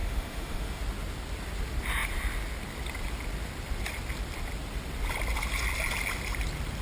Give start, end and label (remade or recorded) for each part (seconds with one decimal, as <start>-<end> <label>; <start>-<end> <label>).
0.0-0.8 remade; 0.8-6.8 recorded